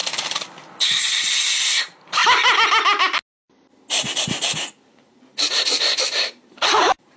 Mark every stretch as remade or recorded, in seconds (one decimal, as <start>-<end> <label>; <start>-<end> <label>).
0.0-1.3 recorded; 1.3-2.2 remade; 2.2-5.4 recorded; 5.4-7.2 remade